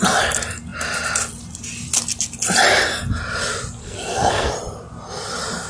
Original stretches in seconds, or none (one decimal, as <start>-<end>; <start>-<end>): 0.0-3.8; 4.5-5.7